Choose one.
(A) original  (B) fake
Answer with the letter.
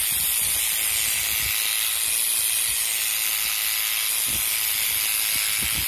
B